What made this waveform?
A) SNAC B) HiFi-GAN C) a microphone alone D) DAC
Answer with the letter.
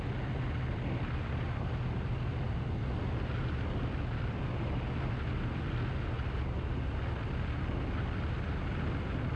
C